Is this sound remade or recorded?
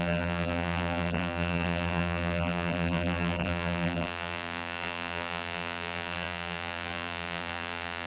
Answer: remade